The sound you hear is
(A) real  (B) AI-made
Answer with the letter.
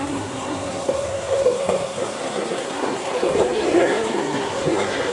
B